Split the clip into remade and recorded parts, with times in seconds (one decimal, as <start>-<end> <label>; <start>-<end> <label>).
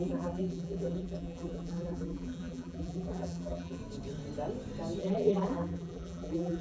0.0-3.8 remade; 3.8-5.0 recorded; 5.0-6.6 remade